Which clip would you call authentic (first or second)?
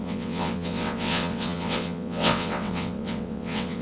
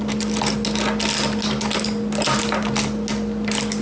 second